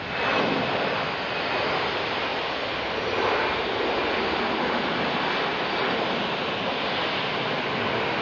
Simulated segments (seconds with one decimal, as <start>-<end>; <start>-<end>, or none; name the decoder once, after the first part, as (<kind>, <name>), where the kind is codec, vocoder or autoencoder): none